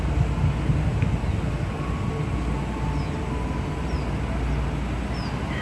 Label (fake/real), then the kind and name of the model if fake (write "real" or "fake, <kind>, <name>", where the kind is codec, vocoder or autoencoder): real